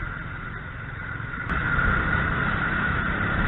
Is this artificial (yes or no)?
no